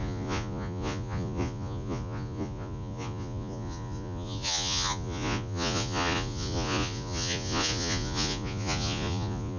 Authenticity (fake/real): fake